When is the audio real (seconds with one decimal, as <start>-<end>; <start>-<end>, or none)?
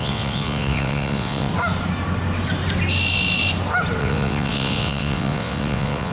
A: 1.5-4.0